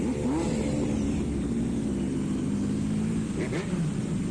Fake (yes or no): no